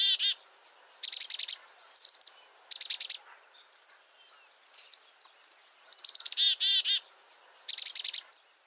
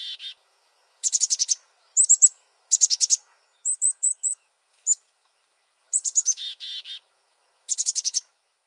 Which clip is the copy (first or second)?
second